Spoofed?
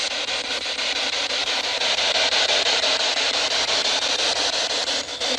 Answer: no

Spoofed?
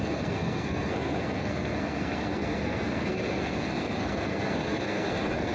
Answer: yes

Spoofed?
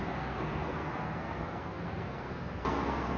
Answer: yes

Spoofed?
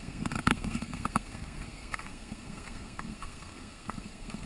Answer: yes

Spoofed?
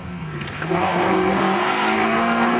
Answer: yes